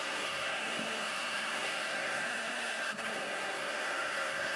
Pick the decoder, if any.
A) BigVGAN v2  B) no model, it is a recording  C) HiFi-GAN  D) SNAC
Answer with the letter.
D